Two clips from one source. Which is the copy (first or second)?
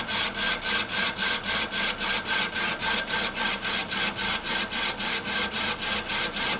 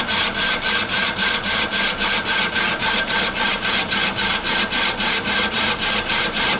second